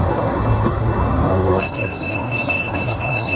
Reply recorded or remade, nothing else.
remade